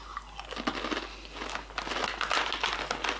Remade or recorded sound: recorded